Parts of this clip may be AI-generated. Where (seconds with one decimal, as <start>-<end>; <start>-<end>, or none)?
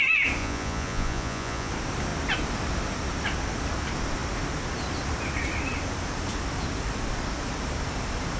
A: 0.4-1.7